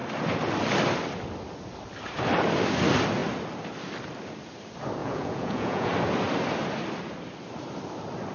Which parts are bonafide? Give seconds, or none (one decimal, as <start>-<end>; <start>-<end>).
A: 0.0-5.0; 5.9-8.3